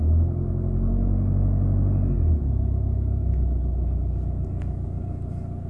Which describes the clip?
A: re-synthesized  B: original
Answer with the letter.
B